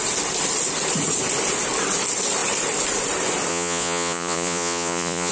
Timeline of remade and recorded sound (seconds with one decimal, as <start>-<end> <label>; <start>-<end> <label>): 0.0-3.5 recorded; 3.5-5.3 remade